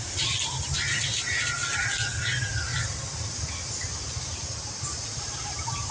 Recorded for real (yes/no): yes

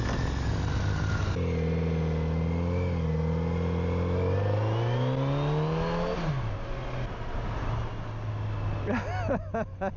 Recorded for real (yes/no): yes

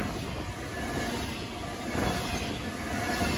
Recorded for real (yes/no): yes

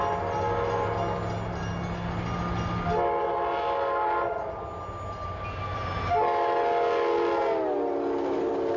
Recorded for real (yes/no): yes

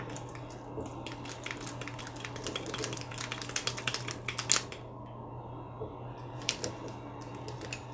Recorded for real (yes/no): yes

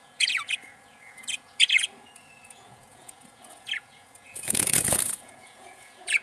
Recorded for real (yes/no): no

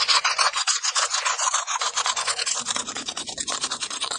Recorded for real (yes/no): no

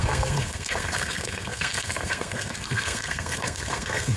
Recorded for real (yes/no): no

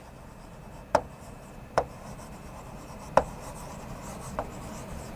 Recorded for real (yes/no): no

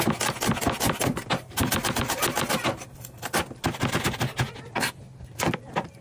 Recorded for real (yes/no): yes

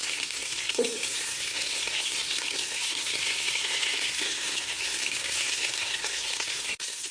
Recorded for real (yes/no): no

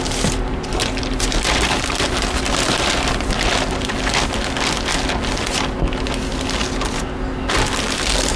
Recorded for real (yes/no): yes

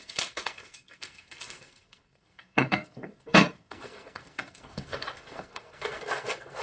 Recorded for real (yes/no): no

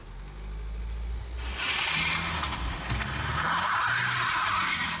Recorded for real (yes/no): yes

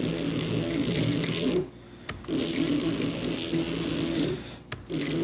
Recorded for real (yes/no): yes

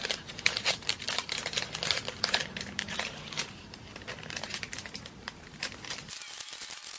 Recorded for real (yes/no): no